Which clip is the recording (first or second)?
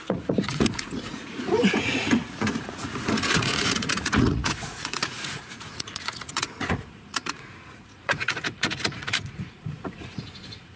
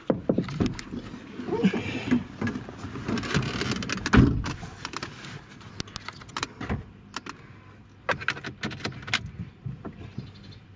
second